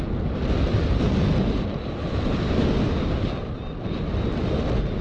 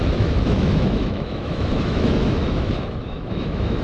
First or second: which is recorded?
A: first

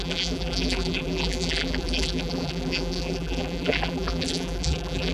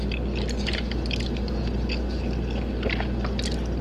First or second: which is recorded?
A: second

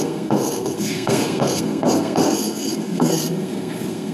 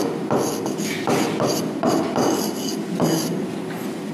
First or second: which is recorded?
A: second